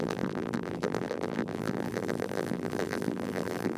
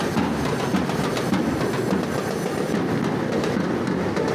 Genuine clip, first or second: second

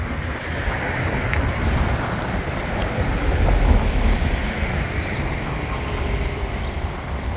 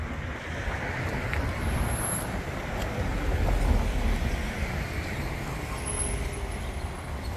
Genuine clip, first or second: second